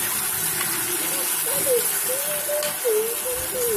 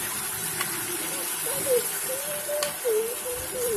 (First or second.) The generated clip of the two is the second